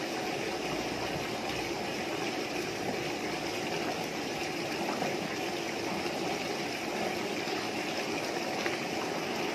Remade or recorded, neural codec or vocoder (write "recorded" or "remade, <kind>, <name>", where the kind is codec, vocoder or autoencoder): recorded